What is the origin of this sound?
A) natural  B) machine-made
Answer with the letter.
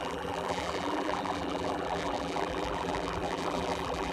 B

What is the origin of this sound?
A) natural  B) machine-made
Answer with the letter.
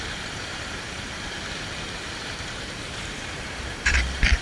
B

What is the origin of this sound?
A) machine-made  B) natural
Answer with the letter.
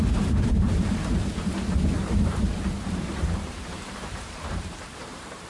A